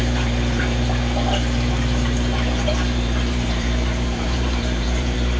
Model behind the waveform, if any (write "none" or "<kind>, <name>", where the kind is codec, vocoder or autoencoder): vocoder, BigVGAN v2